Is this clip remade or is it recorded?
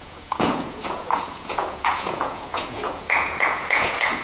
remade